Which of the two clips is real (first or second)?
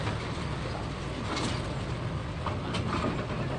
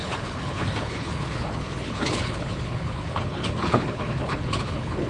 first